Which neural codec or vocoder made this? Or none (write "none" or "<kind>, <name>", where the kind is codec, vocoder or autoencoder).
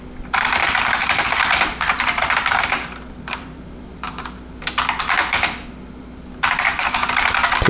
vocoder, BigVGAN v2